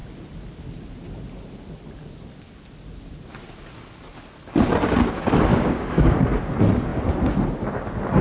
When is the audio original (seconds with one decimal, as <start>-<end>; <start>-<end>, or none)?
0.0-5.5; 6.2-8.2